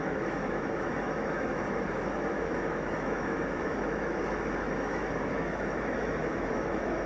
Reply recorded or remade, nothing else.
remade